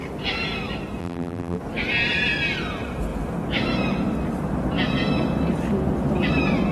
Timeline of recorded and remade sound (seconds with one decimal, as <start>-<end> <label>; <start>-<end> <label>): 0.0-1.0 recorded; 1.0-1.6 remade; 1.6-6.7 recorded